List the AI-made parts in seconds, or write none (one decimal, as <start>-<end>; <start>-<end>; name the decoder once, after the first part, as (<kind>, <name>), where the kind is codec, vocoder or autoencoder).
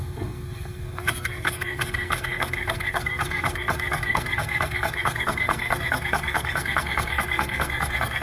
0.0-8.2 (codec, SNAC)